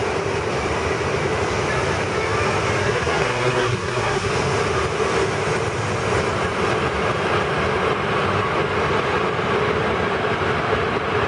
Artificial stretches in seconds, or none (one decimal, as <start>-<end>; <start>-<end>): 2.8-4.3